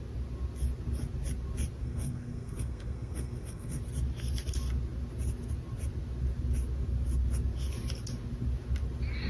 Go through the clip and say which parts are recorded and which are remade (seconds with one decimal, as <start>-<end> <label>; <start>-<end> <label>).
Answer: 0.0-1.8 recorded; 1.8-3.8 remade; 3.8-9.3 recorded